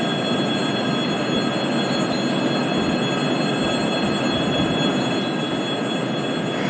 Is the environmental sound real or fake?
real